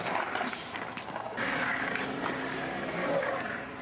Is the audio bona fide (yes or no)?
yes